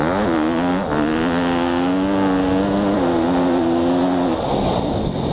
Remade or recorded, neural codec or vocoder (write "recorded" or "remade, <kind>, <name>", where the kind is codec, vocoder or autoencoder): recorded